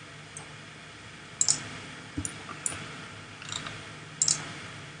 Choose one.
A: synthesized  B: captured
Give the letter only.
B